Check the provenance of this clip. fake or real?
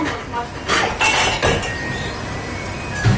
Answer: real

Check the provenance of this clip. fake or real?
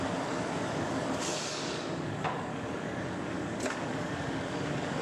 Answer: fake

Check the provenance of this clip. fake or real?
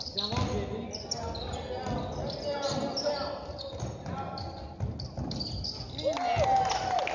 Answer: real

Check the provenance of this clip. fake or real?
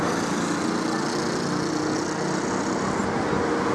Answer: real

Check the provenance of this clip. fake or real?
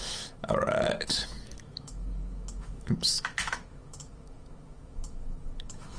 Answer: fake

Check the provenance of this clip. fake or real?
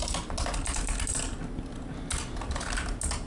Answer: real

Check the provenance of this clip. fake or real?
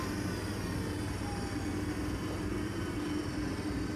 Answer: real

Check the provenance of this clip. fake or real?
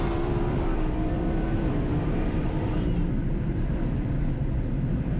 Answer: fake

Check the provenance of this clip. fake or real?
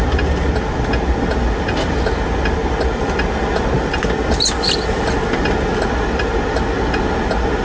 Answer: real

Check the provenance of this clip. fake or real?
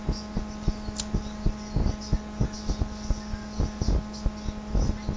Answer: real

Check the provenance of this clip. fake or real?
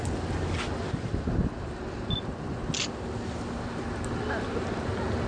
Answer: real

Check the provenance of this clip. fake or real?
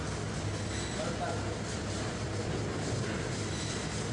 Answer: real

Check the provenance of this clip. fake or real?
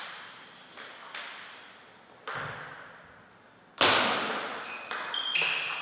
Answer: real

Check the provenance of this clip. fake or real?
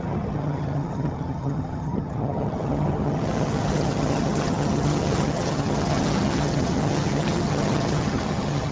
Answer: fake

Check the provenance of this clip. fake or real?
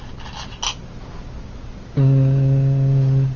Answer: real